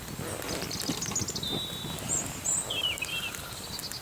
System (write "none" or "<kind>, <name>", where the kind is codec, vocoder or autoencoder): none